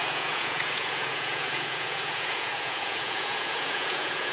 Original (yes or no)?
no